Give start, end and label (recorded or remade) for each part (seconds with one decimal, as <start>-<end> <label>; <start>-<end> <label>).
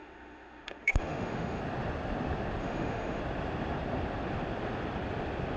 0.0-1.6 remade; 1.6-2.6 recorded; 2.6-3.2 remade; 3.2-5.6 recorded